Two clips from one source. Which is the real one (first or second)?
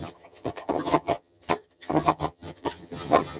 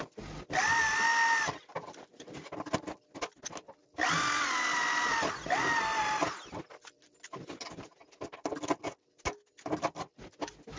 second